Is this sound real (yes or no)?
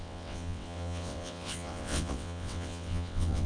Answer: no